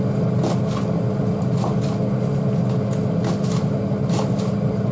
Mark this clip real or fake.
real